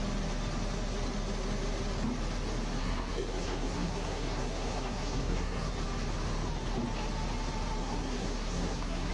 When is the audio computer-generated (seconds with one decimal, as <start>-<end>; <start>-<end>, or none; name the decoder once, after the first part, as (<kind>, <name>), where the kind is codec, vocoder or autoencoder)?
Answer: 2.8-5.7 (codec, SNAC); 7.8-9.1